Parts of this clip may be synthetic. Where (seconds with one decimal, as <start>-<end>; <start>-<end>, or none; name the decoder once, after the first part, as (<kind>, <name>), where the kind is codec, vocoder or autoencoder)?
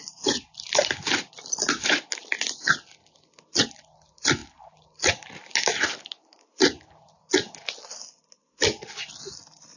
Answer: none